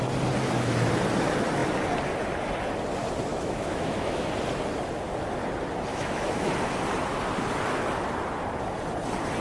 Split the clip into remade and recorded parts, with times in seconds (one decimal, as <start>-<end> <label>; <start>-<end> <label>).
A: 0.0-3.3 recorded; 3.3-4.3 remade; 4.3-5.9 recorded; 5.9-6.5 remade; 6.5-9.4 recorded